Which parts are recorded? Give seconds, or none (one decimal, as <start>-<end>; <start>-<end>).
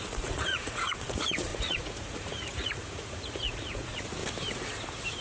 4.2-5.2